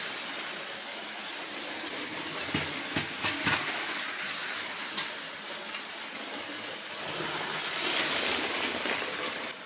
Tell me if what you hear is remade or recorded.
recorded